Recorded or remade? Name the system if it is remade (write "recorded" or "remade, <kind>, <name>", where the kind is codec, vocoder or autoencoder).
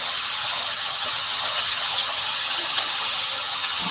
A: remade, vocoder, HiFi-GAN